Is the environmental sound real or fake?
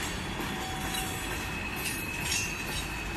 real